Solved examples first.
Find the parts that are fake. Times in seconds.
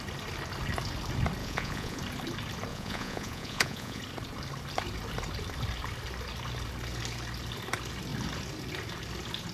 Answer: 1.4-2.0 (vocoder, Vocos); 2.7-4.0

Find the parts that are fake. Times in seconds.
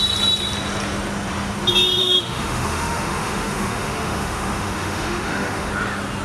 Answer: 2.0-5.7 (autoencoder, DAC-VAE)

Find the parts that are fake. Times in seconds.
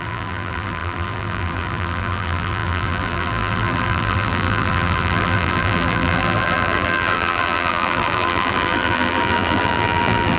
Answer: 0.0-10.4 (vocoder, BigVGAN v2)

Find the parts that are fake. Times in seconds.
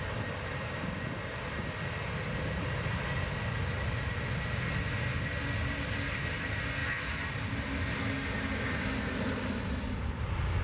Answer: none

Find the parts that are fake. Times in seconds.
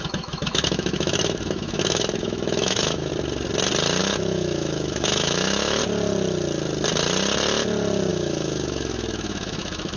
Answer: 0.0-3.1 (autoencoder, DAC-VAE); 4.0-5.8; 8.1-10.0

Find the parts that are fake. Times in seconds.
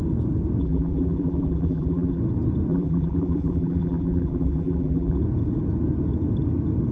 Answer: 0.6-2.2 (vocoder, BigVGAN v2); 2.7-5.2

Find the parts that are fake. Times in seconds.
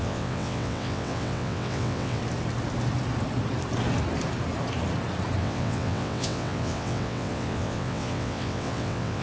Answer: 0.0-2.2 (vocoder, WaveNeXt); 5.4-9.2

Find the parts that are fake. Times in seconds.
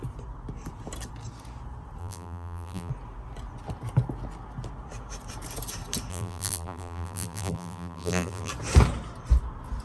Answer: 2.0-2.9 (vocoder, BigVGAN v2); 6.1-8.5